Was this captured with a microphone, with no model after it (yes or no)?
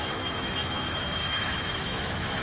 no